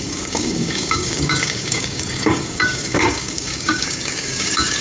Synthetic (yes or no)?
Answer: yes